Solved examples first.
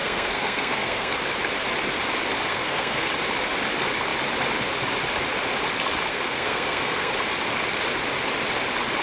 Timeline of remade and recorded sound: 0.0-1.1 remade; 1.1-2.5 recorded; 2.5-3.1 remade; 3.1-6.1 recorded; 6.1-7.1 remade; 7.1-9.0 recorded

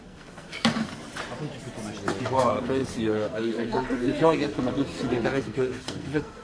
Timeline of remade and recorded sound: 0.0-0.9 remade; 0.9-2.2 recorded; 2.2-6.4 remade

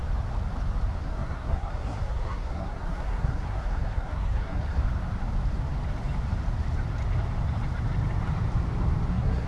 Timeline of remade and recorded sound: 0.0-1.0 recorded; 1.0-4.8 remade; 4.8-9.1 recorded; 9.1-9.5 remade